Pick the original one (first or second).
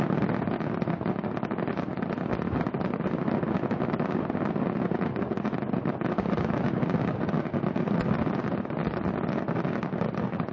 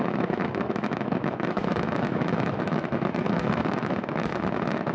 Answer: first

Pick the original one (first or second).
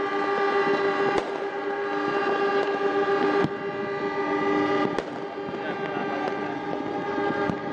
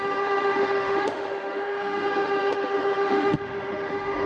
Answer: first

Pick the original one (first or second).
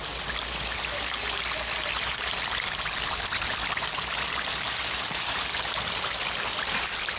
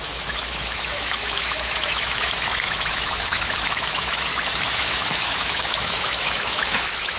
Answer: first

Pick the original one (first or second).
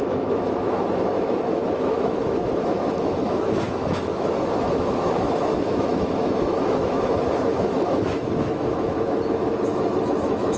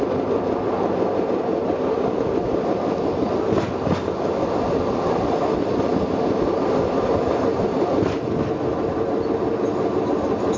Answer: second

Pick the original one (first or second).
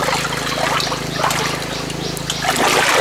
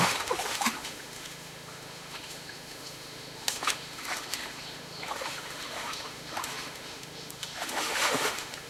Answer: first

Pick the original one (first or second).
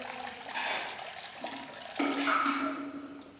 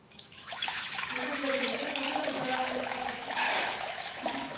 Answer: first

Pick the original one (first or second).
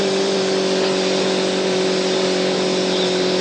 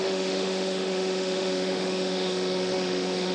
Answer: first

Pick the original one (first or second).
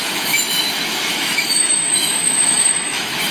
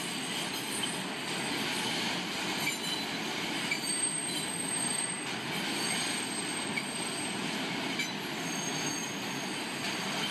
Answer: second